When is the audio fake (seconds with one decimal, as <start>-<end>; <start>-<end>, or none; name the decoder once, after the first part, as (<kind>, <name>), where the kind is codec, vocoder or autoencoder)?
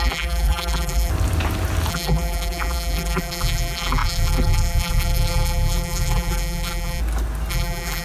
0.0-1.1 (vocoder, BigVGAN v2); 1.9-7.0; 7.5-8.0